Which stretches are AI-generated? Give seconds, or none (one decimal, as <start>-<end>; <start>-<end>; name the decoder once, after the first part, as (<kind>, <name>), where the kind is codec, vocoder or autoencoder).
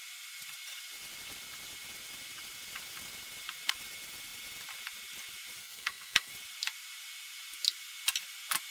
5.6-6.3 (codec, SNAC)